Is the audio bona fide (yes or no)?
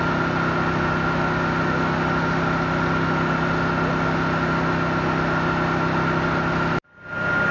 yes